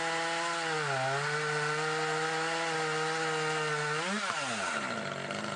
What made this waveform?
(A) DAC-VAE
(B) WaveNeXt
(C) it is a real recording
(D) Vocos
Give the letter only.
C